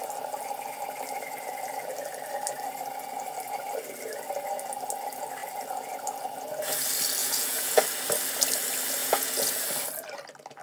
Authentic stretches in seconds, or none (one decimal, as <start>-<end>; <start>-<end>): 0.0-7.2; 7.8-9.0; 9.6-10.6